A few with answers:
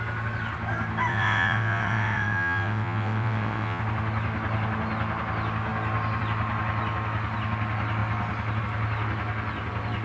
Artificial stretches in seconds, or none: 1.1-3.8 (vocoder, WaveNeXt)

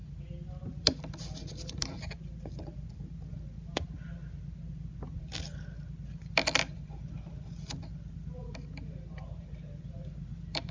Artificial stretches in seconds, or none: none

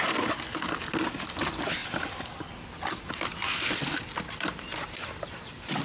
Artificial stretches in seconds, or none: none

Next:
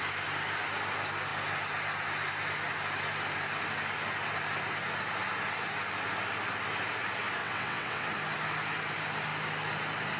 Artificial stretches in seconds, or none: 7.4-8.1 (vocoder, WaveNeXt)